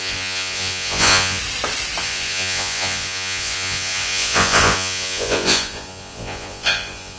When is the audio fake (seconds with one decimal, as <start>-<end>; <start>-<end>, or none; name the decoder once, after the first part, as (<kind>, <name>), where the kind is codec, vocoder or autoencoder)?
0.0-1.4 (vocoder, Vocos); 2.0-7.2